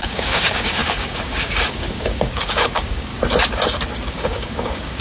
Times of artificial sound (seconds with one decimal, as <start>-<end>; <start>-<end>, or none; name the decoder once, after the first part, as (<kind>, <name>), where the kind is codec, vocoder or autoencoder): 0.0-3.1 (codec, DAC); 4.1-5.0